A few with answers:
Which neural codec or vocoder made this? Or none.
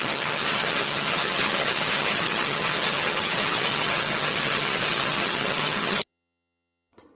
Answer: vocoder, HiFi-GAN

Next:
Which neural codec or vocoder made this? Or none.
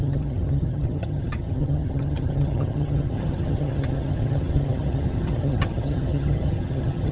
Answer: vocoder, HiFi-GAN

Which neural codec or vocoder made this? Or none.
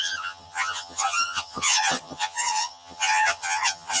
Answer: vocoder, HiFi-GAN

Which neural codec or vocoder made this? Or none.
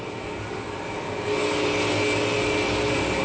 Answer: none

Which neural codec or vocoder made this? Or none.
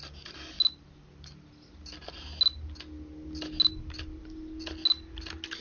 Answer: none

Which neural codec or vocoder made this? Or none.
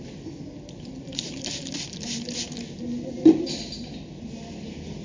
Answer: none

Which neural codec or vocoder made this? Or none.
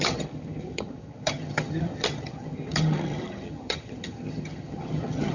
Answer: vocoder, HiFi-GAN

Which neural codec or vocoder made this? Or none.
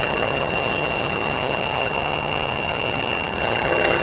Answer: vocoder, HiFi-GAN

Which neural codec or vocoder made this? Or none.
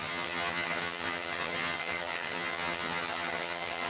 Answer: vocoder, HiFi-GAN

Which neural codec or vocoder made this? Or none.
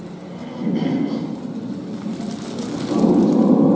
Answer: none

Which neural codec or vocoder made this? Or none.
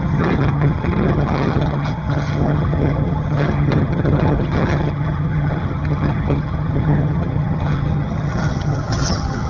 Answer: vocoder, HiFi-GAN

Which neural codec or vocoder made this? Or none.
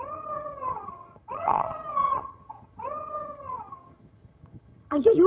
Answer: vocoder, HiFi-GAN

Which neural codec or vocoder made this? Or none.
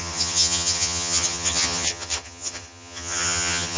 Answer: vocoder, HiFi-GAN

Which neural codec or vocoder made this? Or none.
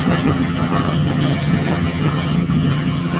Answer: vocoder, HiFi-GAN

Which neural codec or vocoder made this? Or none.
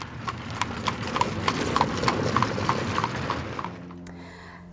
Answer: none